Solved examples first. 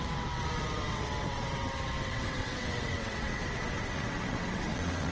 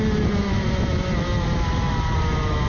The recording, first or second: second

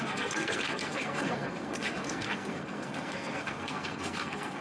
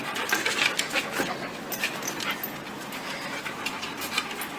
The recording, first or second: second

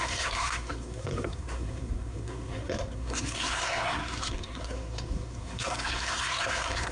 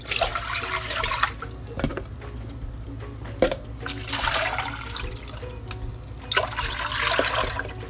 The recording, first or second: second